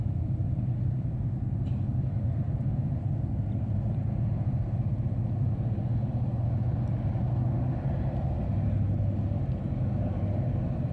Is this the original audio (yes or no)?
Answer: yes